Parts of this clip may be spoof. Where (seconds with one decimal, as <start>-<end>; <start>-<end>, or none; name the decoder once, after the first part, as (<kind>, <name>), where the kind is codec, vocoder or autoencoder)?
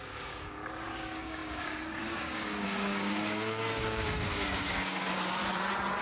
0.0-5.4 (codec, DAC)